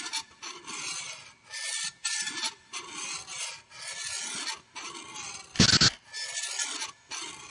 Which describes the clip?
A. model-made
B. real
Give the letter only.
B